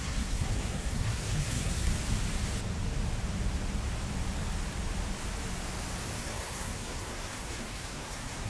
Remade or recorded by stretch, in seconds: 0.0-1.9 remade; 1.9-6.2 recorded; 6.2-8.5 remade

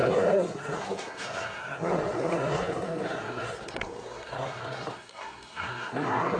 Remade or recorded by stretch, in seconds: 0.0-6.4 remade